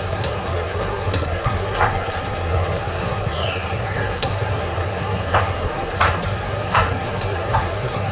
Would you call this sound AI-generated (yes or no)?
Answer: yes